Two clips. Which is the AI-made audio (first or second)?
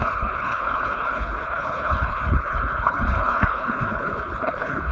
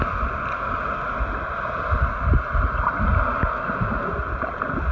first